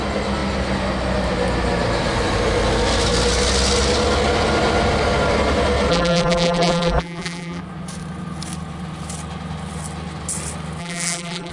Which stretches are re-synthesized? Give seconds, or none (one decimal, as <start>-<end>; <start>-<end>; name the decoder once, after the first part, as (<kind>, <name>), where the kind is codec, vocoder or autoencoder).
5.9-7.6 (vocoder, BigVGAN v2); 10.8-11.5